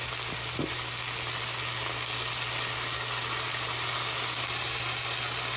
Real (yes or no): yes